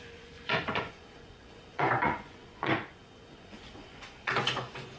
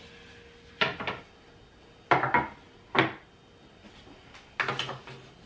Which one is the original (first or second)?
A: second